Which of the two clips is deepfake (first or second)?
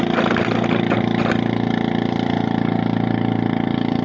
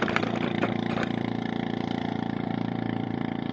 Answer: second